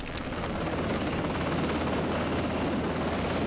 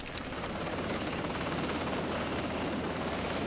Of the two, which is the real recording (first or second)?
first